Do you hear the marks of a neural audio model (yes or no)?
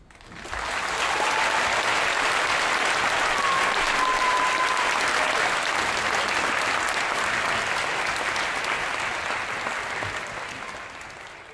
no